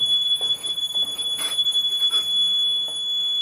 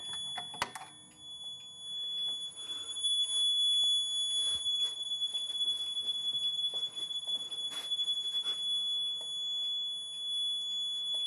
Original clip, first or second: second